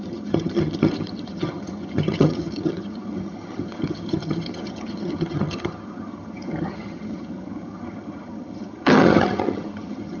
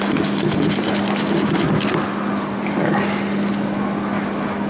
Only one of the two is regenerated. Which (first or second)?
first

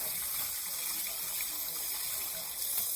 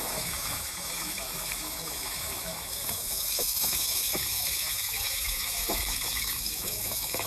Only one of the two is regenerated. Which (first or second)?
second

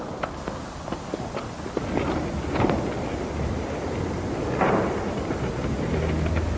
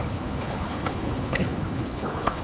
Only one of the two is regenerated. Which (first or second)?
second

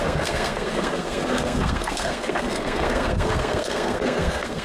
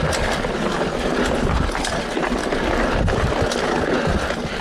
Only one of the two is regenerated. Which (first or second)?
first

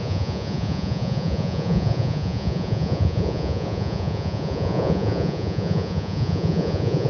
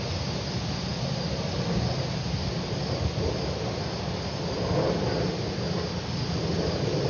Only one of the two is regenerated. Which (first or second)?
first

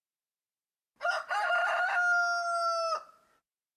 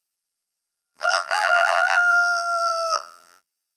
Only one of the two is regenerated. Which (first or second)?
second